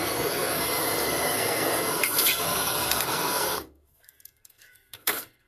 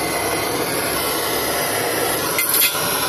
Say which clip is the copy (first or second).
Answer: first